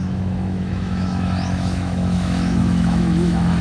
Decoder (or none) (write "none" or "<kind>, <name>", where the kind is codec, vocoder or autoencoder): autoencoder, DAC-VAE